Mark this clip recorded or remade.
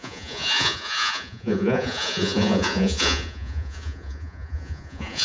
remade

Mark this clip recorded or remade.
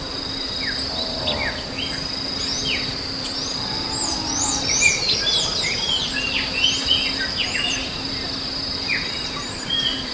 recorded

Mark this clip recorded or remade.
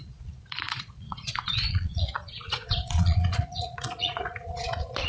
remade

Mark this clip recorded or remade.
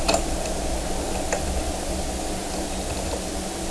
recorded